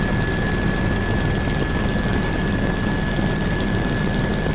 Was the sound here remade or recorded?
recorded